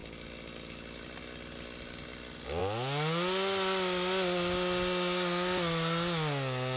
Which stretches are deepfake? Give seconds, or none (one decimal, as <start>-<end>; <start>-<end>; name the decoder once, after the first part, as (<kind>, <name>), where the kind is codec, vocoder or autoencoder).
none